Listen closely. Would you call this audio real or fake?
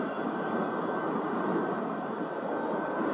real